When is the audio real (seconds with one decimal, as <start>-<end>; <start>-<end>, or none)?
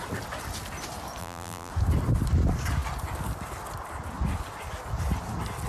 0.0-1.2; 1.7-5.7